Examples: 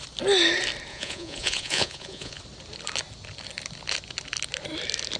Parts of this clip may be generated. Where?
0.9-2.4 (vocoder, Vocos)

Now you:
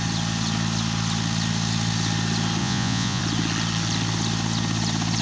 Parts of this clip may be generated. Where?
2.6-3.2 (vocoder, Vocos)

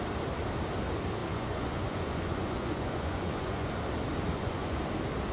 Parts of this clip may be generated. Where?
1.2-3.8 (vocoder, Vocos); 4.3-4.8

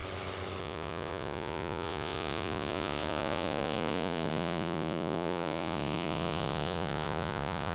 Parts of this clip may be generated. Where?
0.6-7.7 (vocoder, Vocos)

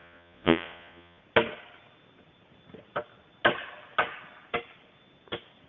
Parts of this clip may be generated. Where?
0.0-1.2 (vocoder, Vocos)

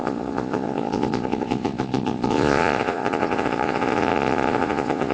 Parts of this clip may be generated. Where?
0.0-5.1 (vocoder, Vocos)

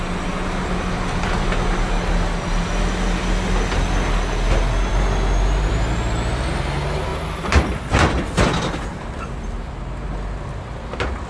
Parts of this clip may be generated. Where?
none

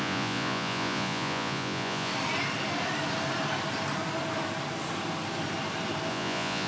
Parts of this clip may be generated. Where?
0.0-2.1 (vocoder, Vocos); 6.1-6.7